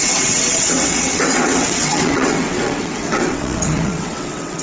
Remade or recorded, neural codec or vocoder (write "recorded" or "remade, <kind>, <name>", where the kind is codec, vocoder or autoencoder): remade, vocoder, WaveNeXt